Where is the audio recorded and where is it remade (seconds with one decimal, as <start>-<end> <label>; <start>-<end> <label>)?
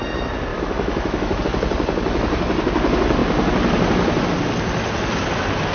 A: 0.0-0.5 recorded; 0.5-1.4 remade; 1.4-5.7 recorded